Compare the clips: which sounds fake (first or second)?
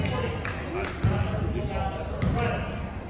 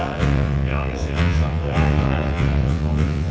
second